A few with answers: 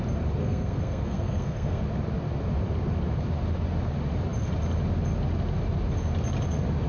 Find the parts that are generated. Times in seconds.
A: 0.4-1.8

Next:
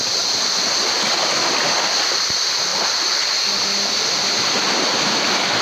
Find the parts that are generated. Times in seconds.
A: none

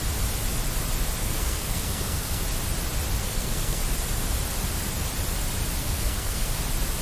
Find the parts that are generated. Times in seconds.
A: 1.2-2.4; 3.2-3.8; 5.8-6.6